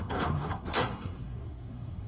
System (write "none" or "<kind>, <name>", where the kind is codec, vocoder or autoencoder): codec, SNAC